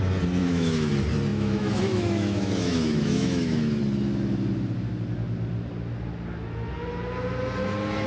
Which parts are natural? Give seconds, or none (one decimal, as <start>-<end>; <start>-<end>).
0.0-0.4; 0.9-1.3; 3.8-8.1